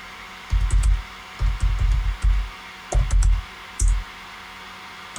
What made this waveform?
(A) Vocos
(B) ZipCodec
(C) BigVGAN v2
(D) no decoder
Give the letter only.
D